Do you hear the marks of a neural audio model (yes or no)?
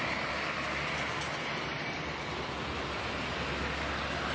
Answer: no